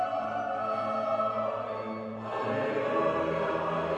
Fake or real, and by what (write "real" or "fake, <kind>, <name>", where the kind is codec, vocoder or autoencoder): real